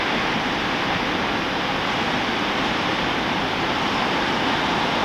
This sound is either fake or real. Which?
real